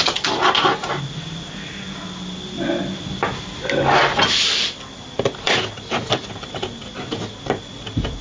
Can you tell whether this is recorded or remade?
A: recorded